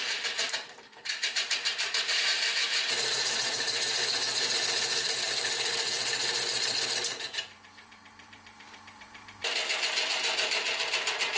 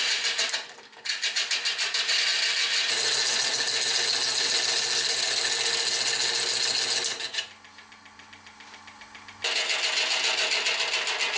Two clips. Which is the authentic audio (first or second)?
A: second